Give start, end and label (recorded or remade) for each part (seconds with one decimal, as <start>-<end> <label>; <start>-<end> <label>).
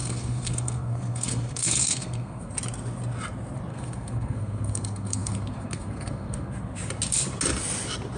0.0-2.5 remade; 2.5-3.7 recorded; 3.7-6.5 remade; 6.5-8.2 recorded